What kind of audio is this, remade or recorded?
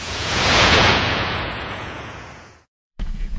remade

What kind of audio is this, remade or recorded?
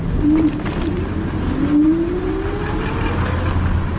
recorded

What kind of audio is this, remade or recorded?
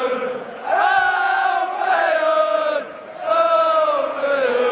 remade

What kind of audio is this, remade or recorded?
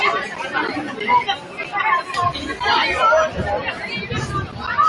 recorded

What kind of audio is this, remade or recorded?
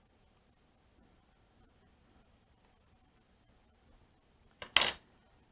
recorded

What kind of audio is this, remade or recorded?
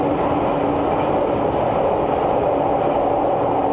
recorded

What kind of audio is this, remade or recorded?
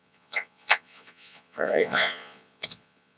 remade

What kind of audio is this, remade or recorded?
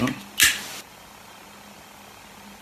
recorded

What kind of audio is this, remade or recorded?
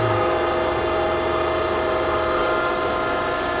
recorded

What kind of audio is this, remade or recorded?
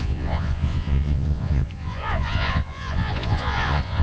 remade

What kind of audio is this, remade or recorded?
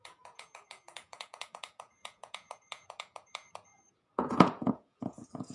remade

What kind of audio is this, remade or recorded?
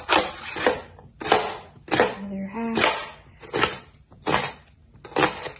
recorded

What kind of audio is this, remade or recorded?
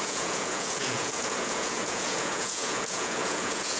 remade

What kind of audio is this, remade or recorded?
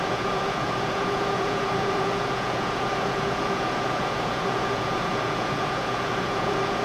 remade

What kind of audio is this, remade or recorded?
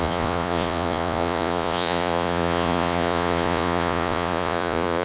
remade